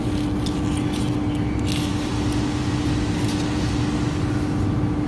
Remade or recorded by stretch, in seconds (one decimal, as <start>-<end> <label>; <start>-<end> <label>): 0.0-5.1 recorded